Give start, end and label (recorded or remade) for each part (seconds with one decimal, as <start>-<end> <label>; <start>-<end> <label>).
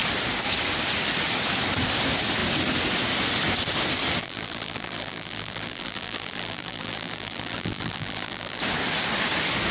0.0-4.2 recorded; 4.2-8.6 remade; 8.6-9.7 recorded